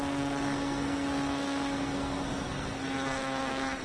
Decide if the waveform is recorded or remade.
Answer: remade